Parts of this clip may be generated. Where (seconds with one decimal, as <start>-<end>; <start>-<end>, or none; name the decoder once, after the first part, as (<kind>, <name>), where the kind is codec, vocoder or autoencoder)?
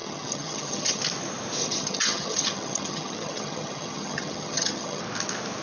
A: 0.0-1.0 (vocoder, HiFi-GAN); 1.6-5.0